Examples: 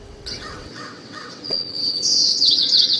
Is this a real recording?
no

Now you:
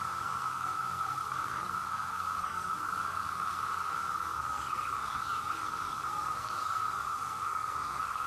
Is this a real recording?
no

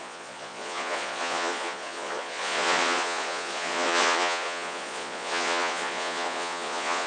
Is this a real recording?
no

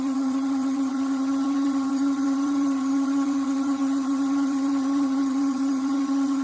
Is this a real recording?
no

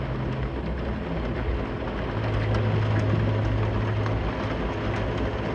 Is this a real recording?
yes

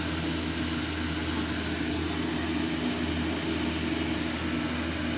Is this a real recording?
yes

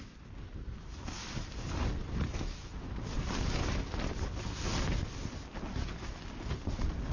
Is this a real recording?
yes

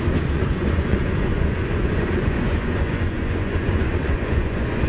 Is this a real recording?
no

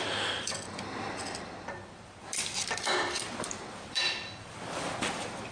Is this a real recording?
no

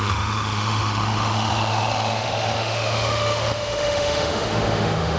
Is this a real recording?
no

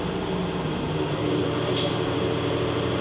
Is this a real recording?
yes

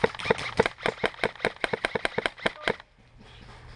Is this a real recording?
yes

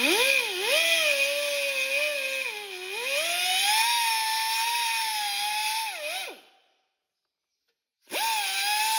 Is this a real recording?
yes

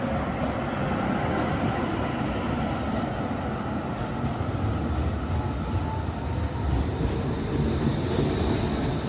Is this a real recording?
yes